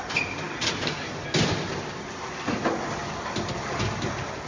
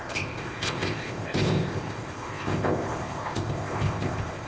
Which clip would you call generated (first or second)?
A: second